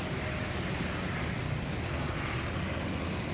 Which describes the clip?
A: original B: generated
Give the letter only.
A